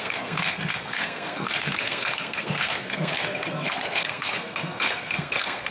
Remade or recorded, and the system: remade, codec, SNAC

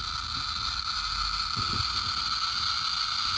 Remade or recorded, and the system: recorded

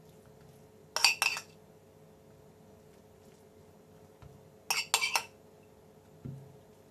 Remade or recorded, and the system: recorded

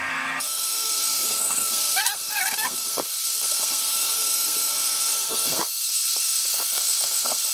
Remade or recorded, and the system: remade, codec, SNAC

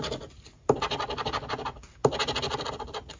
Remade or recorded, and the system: recorded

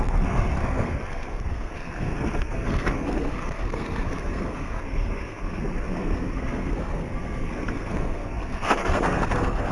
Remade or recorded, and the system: remade, codec, SNAC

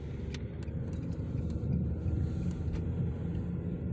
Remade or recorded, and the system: recorded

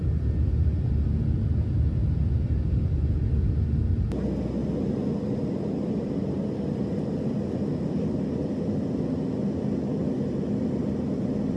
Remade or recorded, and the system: recorded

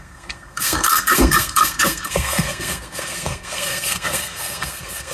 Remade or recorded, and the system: remade, codec, SNAC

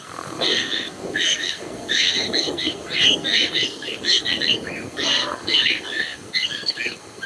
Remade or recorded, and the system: remade, codec, SNAC